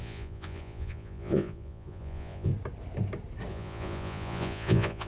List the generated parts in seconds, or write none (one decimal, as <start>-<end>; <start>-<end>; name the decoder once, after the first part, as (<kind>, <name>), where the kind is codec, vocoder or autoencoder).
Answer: 0.0-2.5 (vocoder, Vocos); 3.5-5.1